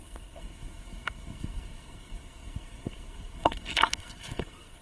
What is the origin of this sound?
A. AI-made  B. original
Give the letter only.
A